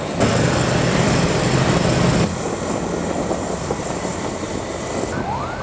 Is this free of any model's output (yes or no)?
yes